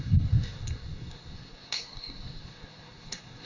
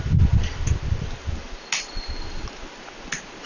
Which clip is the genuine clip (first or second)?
second